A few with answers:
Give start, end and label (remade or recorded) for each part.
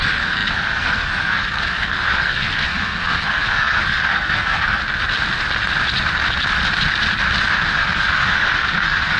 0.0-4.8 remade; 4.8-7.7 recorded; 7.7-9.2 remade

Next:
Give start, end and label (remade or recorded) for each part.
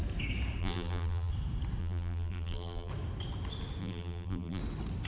0.0-0.6 recorded; 0.6-1.3 remade; 1.3-1.8 recorded; 1.8-2.9 remade; 2.9-3.8 recorded; 3.8-4.6 remade; 4.6-5.1 recorded